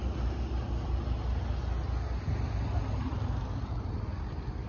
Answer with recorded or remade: recorded